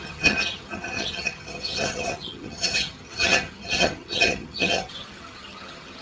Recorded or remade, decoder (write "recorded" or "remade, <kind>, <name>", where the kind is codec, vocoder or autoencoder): remade, vocoder, HiFi-GAN